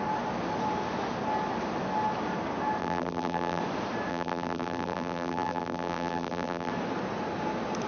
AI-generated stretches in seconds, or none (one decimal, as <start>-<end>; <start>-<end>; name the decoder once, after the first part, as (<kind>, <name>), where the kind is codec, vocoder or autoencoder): 2.8-3.6 (vocoder, BigVGAN v2); 4.1-6.7